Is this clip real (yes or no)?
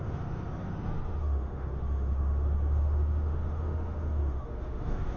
no